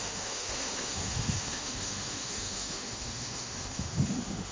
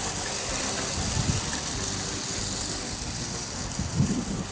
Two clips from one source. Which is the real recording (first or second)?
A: second